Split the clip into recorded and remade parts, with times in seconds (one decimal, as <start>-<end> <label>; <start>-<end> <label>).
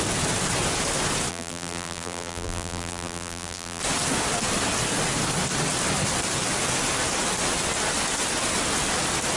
0.0-1.3 recorded; 1.3-3.8 remade; 3.8-9.4 recorded